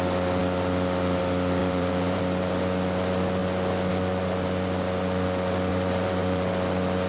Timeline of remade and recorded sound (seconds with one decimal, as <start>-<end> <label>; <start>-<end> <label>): 0.0-1.6 recorded; 1.6-2.2 remade; 2.2-5.7 recorded; 5.7-6.5 remade; 6.5-7.1 recorded